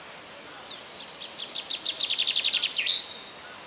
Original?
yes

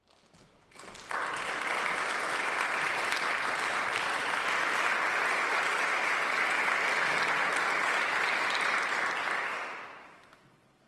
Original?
yes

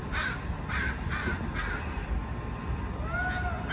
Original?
yes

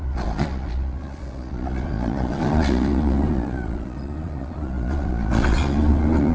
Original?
no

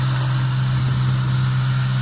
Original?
yes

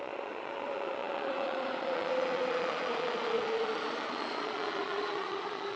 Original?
no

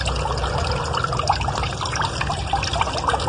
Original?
yes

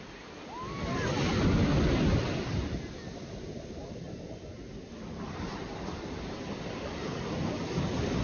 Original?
yes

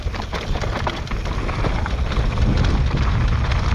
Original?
yes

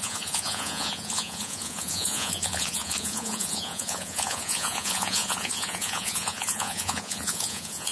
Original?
no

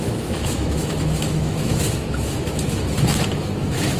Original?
no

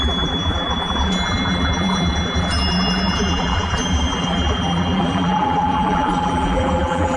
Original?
no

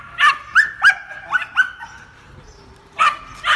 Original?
yes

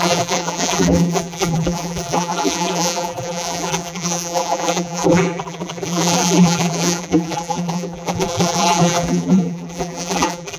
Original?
no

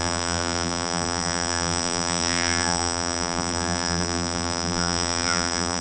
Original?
no